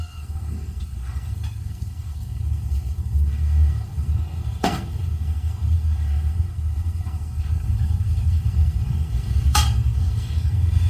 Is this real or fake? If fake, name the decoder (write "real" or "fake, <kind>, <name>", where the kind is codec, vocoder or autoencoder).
fake, codec, SNAC